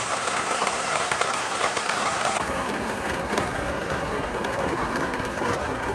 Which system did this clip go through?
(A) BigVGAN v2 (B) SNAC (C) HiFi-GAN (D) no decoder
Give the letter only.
B